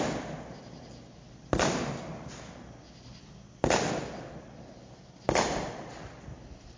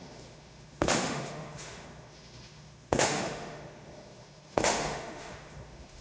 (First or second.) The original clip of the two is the first